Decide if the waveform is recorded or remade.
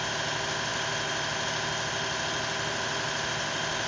recorded